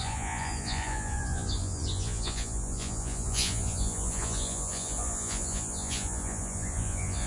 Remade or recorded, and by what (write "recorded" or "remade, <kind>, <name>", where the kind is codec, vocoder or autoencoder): remade, vocoder, Vocos